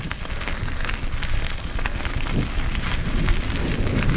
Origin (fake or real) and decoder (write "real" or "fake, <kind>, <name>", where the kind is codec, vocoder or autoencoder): real